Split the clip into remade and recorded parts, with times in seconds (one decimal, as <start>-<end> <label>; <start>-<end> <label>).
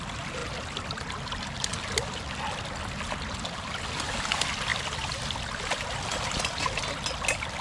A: 0.0-7.6 recorded